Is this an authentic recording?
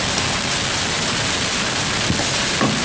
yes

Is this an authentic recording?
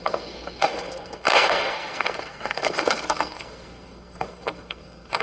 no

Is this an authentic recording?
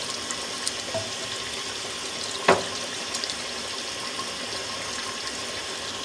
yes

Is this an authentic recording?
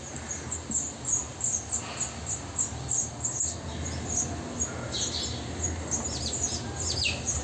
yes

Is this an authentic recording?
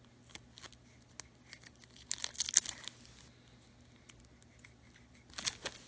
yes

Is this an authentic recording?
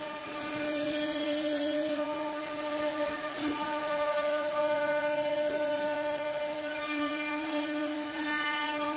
no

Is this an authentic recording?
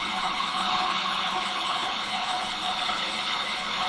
no